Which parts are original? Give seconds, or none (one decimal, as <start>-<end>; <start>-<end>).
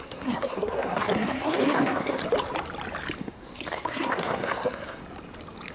2.2-3.2; 5.0-5.7